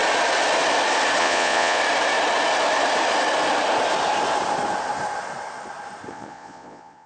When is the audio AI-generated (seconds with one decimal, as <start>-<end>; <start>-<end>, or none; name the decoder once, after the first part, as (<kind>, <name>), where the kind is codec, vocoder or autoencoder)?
1.2-1.8 (vocoder, Vocos); 6.1-7.1